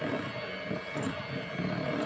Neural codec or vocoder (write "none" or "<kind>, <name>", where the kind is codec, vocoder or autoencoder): none